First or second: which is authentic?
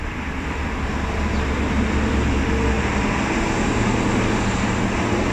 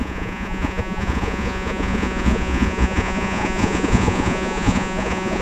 first